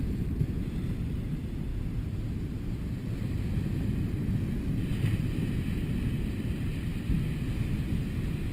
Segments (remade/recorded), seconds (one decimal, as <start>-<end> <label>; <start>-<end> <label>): 0.0-8.5 recorded